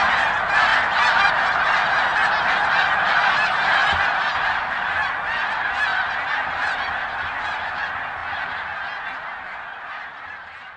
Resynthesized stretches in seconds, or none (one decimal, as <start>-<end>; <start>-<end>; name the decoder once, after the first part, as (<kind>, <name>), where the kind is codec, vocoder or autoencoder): none